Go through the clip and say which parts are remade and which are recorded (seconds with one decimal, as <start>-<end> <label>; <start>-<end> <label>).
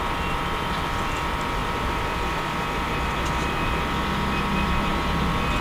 0.0-5.6 recorded